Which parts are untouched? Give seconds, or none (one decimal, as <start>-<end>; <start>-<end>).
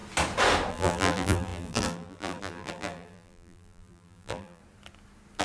0.0-0.7; 4.6-5.4